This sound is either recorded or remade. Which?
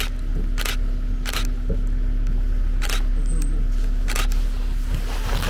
recorded